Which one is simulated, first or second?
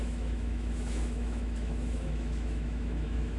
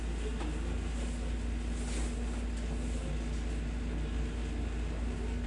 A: first